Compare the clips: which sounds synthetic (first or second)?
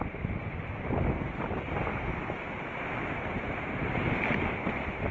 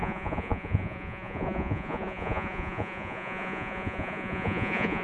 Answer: second